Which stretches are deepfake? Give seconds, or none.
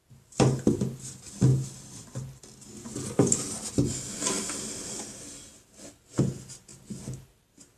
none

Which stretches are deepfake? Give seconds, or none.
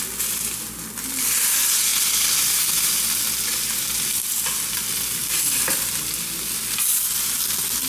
none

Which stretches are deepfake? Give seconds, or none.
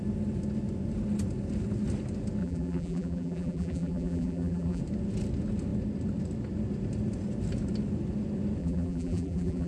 2.4-4.8 (vocoder, BigVGAN v2); 8.6-9.7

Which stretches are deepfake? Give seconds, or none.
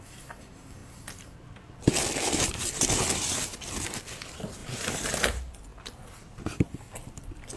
0.0-4.6 (vocoder, BigVGAN v2); 5.1-5.7; 6.2-7.6